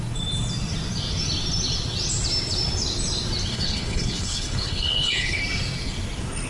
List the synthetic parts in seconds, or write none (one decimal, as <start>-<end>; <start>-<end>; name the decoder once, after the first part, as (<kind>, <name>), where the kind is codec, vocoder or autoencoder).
3.5-5.4 (codec, HILCodec)